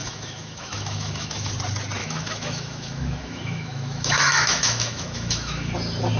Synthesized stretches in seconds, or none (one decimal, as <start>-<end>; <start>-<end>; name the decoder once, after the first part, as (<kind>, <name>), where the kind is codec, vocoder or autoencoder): 0.0-1.5 (autoencoder, DAC-VAE); 2.0-5.7